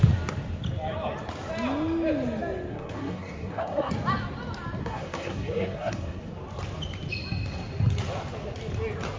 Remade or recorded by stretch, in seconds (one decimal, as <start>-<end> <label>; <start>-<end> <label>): 0.0-2.7 recorded; 2.7-3.9 remade; 3.9-4.8 recorded; 4.8-6.2 remade; 6.2-9.2 recorded